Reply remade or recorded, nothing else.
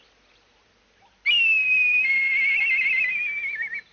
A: recorded